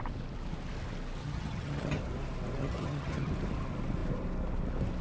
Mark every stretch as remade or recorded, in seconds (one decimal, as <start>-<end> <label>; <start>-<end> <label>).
0.0-1.2 recorded; 1.2-2.0 remade; 2.0-2.6 recorded; 2.6-3.3 remade; 3.3-5.0 recorded